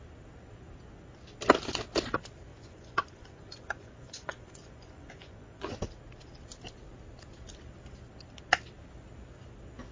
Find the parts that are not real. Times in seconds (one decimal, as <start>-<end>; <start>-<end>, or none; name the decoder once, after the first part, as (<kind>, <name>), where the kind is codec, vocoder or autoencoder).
2.5-5.7 (vocoder, Vocos)